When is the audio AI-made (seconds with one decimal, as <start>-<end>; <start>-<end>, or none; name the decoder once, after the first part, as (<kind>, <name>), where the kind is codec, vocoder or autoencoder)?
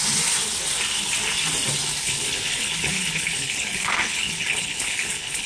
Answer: 1.9-5.5 (codec, HILCodec)